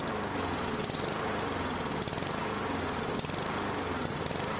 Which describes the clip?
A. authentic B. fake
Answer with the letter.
A